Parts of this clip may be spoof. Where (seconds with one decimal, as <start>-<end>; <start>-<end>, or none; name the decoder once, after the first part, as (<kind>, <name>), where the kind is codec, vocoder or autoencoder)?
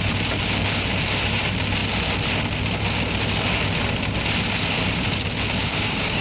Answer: 5.6-6.2 (codec, DAC)